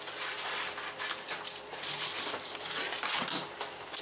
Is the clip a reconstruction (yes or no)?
no